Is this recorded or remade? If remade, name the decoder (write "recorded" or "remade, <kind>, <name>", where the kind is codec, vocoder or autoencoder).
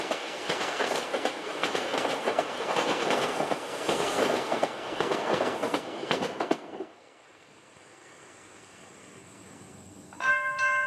remade, codec, SNAC